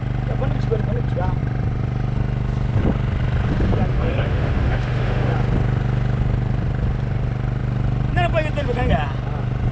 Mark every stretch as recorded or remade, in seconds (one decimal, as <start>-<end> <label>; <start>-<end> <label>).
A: 0.0-3.9 recorded; 3.9-5.3 remade; 5.3-9.7 recorded